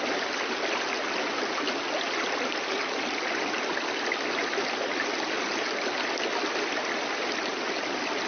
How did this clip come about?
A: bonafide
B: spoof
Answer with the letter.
A